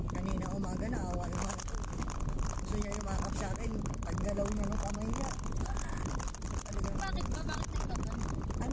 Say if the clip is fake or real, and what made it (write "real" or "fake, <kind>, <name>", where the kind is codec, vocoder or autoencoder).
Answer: real